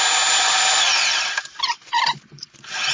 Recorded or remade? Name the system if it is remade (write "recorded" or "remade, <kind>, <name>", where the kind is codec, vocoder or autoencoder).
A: recorded